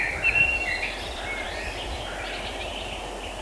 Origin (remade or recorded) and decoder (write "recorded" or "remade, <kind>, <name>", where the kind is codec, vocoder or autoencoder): recorded